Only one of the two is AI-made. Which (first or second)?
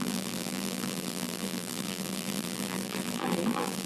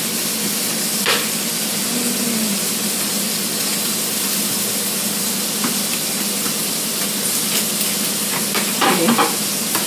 first